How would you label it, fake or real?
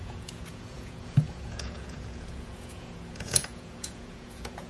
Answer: fake